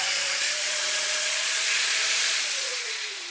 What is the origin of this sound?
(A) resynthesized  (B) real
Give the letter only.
A